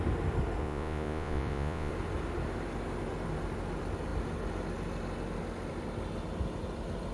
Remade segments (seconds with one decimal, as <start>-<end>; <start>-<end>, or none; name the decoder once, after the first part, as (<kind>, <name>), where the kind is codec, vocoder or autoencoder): 0.6-1.9 (vocoder, Vocos)